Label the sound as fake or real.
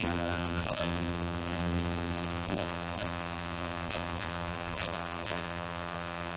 fake